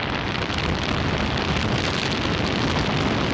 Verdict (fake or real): real